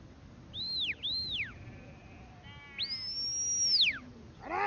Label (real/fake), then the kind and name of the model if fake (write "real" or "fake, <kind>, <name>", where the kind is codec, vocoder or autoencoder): real